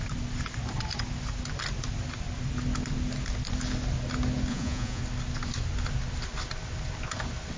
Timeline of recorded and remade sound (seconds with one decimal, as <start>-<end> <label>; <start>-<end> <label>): 0.0-4.5 recorded; 4.5-5.0 remade; 5.0-7.6 recorded